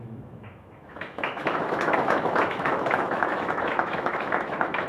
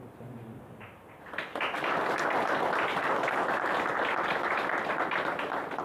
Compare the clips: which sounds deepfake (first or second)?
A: first